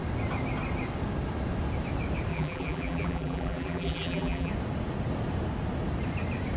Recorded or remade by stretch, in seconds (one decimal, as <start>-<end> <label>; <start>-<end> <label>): 0.0-2.3 recorded; 2.3-4.5 remade; 4.5-6.6 recorded